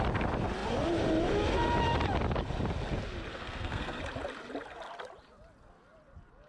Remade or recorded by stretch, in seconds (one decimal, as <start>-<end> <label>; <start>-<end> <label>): 0.0-3.3 recorded; 3.3-4.0 remade; 4.0-6.5 recorded